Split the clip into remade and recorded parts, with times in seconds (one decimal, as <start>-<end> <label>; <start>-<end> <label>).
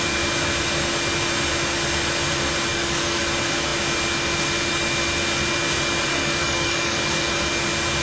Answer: 0.0-2.7 recorded; 2.7-3.2 remade; 3.2-6.1 recorded; 6.1-7.3 remade; 7.3-8.0 recorded